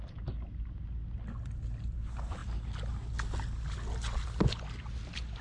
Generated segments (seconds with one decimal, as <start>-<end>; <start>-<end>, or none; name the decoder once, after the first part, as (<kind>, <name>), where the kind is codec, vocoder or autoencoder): none